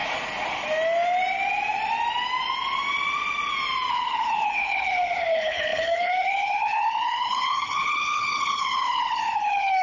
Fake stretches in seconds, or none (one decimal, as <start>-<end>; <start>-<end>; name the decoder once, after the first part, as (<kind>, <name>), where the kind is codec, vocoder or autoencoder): 3.9-9.8 (codec, HILCodec)